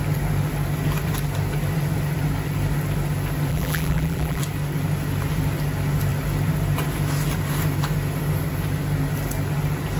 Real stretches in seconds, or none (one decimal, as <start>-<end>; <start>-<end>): 0.0-3.5; 4.4-10.0